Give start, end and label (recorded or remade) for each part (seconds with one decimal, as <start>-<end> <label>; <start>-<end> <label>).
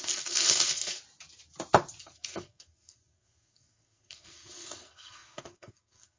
0.0-1.0 remade; 1.0-2.0 recorded; 2.0-6.2 remade